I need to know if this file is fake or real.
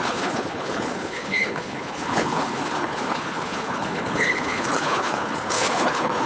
fake